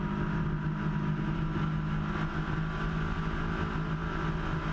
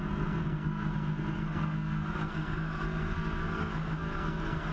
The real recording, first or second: first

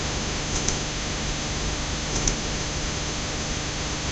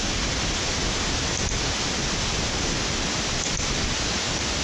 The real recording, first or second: second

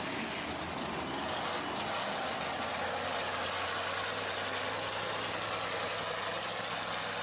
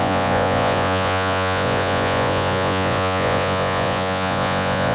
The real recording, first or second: first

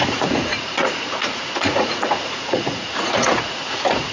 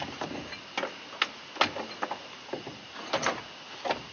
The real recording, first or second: second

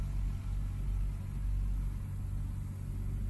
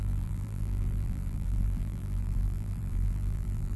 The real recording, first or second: first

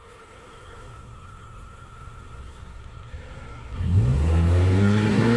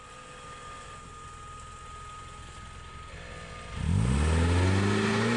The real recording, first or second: second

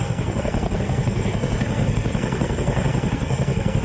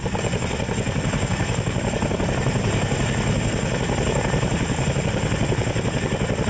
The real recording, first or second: second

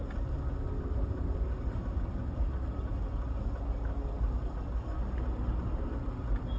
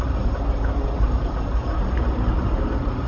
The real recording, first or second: first